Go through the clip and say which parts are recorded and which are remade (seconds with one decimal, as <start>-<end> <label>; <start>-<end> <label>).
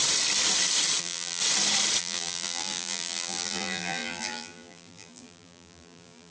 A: 0.0-1.0 recorded; 1.0-1.4 remade; 1.4-2.0 recorded; 2.0-6.3 remade